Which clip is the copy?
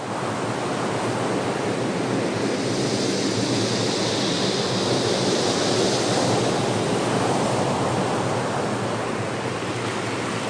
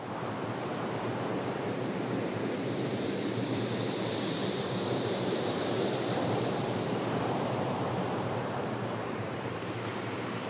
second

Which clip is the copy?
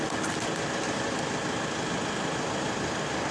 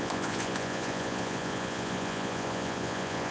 second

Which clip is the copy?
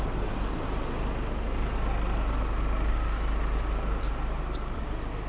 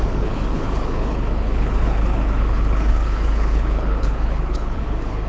second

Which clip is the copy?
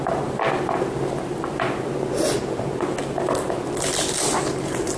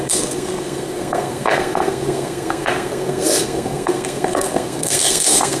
second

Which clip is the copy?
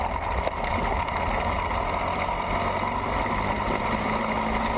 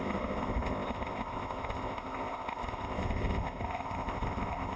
second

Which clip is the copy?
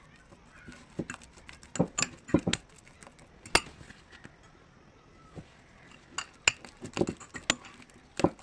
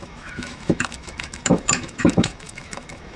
second